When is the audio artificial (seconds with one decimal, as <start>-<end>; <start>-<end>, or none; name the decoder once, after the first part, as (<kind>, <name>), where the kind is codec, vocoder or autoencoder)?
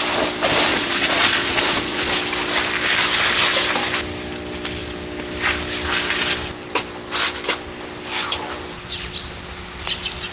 0.7-2.1 (vocoder, Vocos)